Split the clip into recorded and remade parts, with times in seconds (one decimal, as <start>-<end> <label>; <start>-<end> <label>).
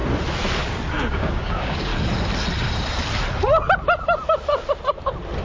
0.0-1.1 recorded; 1.1-1.9 remade; 1.9-5.4 recorded